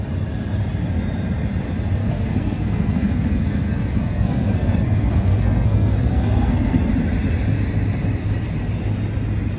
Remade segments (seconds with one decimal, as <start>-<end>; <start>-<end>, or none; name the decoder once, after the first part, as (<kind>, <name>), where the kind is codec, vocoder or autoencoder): 2.0-6.9 (codec, SNAC)